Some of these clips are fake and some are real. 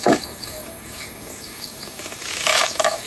fake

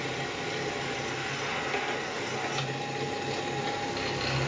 real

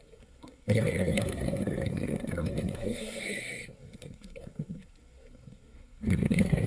fake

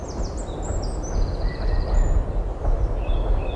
real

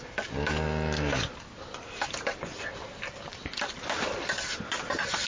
real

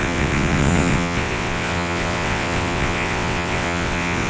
fake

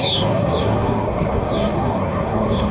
fake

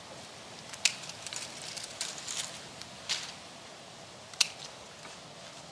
real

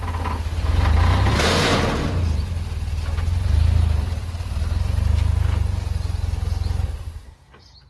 real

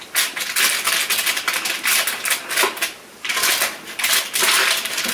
real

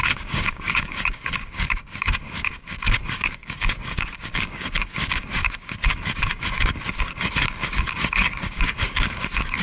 fake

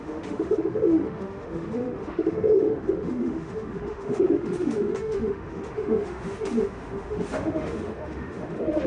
fake